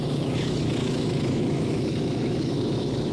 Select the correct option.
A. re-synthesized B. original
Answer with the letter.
A